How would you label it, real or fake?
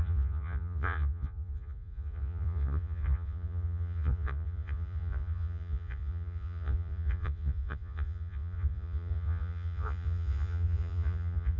fake